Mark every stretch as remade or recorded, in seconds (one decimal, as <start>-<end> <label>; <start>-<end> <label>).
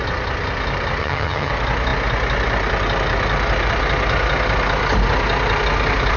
0.0-1.0 recorded; 1.0-1.5 remade; 1.5-6.2 recorded